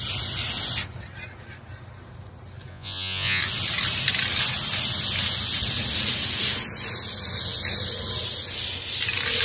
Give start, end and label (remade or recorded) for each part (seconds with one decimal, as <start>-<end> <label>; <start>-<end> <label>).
0.0-2.7 recorded; 2.7-3.4 remade; 3.4-9.4 recorded